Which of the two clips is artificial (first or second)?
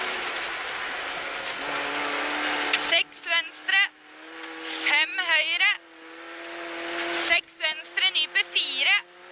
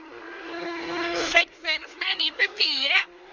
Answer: second